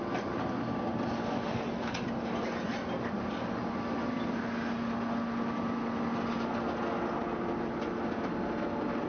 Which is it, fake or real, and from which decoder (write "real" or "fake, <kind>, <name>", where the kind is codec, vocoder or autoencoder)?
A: real